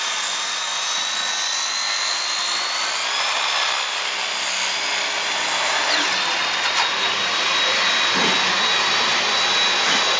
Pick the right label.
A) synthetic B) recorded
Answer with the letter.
B